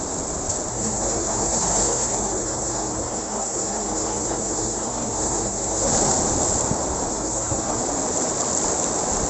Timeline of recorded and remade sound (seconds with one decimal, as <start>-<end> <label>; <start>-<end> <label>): 0.0-0.7 recorded; 0.7-5.9 remade; 5.9-7.1 recorded; 7.1-7.8 remade; 7.8-9.3 recorded